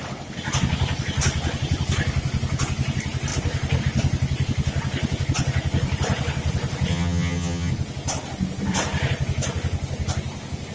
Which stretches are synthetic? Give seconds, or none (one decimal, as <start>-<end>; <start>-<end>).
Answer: 6.9-7.7